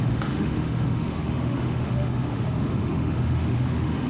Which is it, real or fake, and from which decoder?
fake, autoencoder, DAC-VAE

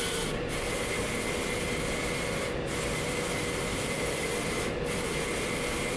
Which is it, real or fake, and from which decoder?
real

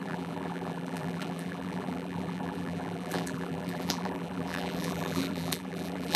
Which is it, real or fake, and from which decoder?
fake, vocoder, BigVGAN v2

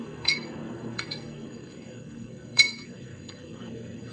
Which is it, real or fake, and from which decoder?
fake, codec, SNAC